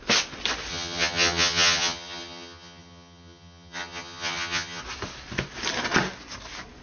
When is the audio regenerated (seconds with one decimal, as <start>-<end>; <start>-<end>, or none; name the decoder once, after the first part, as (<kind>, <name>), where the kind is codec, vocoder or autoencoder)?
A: 0.7-4.8 (vocoder, HiFi-GAN)